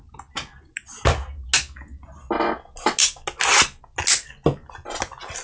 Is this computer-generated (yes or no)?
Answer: no